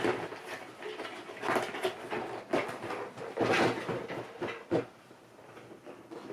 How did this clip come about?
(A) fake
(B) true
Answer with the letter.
B